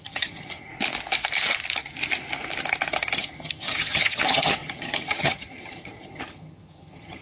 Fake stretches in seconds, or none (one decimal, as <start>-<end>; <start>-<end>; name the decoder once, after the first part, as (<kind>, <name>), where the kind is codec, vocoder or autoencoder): 0.0-0.7 (vocoder, HiFi-GAN); 3.0-7.2